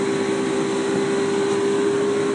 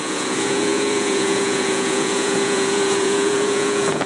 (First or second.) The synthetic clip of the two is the second